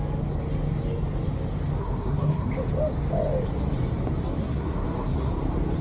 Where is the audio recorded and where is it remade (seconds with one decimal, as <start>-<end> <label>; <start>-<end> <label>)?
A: 0.0-1.8 recorded; 1.8-2.5 remade; 2.5-4.4 recorded; 4.4-5.3 remade; 5.3-5.8 recorded